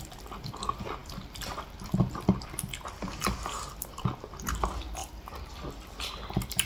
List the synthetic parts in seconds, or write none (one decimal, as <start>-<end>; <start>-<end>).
none